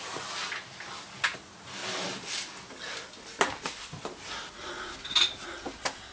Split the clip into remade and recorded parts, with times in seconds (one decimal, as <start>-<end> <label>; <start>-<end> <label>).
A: 0.0-6.1 recorded